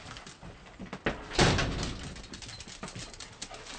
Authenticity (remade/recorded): recorded